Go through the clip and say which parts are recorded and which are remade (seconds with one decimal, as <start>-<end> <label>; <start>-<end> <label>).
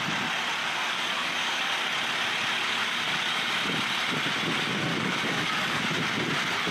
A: 0.0-0.6 recorded; 0.6-1.8 remade; 1.8-2.8 recorded; 2.8-3.5 remade; 3.5-4.9 recorded; 4.9-5.8 remade; 5.8-6.7 recorded